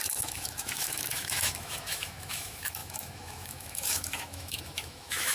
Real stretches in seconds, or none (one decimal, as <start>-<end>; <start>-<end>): none